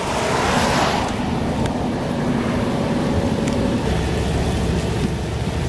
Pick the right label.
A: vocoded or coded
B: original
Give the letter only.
B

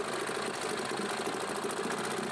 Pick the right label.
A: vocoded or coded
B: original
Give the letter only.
B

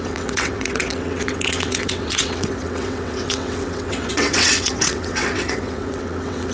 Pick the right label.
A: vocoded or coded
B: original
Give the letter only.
A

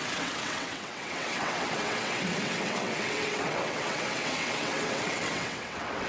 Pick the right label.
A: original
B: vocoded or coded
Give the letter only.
B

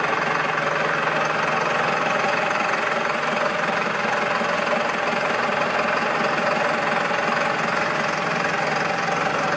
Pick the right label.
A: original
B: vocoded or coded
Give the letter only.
A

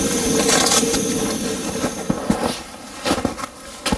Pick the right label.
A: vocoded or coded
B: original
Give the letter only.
B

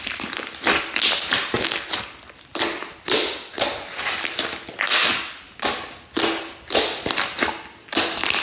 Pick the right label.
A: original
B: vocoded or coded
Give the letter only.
A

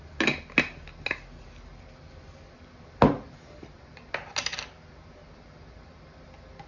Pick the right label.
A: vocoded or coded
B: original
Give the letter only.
B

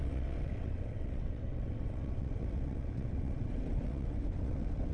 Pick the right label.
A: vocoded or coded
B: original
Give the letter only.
A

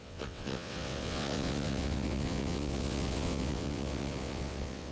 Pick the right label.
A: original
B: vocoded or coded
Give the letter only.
B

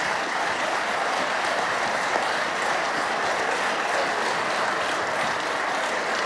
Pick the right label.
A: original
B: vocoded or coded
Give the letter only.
A